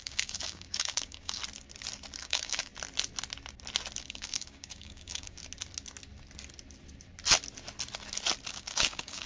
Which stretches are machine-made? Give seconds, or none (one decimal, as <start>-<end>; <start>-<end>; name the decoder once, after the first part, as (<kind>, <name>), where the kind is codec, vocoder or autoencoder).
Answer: 0.0-1.4 (codec, DAC); 2.2-2.7; 4.0-5.4; 8.5-9.3